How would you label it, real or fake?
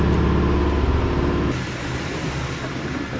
real